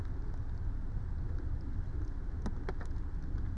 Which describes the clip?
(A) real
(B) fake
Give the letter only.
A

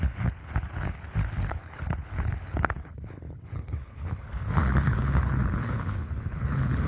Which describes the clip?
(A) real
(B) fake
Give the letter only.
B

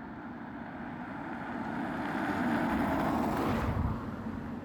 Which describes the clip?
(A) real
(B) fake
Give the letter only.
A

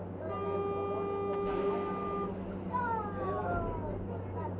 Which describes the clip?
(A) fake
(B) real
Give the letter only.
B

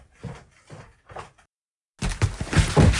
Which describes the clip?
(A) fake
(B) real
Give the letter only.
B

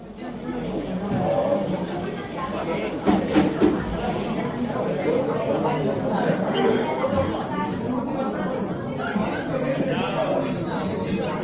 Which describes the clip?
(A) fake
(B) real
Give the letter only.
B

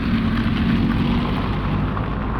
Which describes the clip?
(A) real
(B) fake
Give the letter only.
A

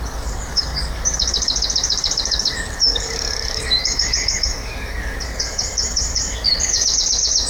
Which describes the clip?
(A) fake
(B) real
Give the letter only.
A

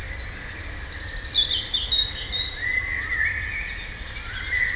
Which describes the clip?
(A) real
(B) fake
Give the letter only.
A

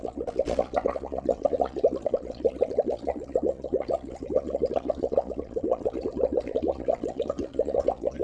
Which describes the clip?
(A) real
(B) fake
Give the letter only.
B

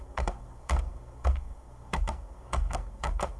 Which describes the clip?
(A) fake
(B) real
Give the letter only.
A